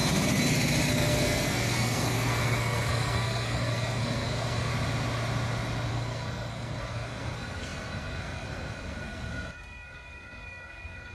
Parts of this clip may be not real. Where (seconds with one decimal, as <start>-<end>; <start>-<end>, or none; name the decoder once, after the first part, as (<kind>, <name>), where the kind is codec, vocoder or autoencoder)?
0.9-4.7 (codec, SNAC); 5.9-11.1